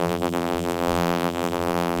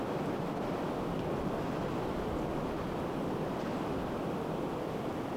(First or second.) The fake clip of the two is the first